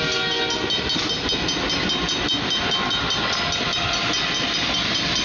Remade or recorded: recorded